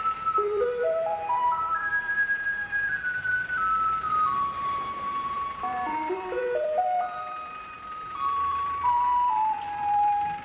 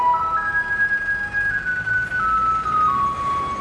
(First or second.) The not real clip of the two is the first